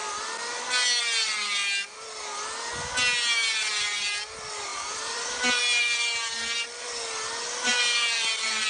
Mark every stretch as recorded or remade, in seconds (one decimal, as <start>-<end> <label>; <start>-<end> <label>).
0.0-4.7 recorded; 4.7-6.2 remade; 6.2-7.7 recorded; 7.7-8.7 remade

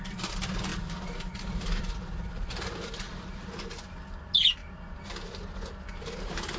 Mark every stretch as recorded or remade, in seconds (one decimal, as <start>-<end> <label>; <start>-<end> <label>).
0.0-0.7 recorded; 0.7-2.9 remade; 2.9-6.6 recorded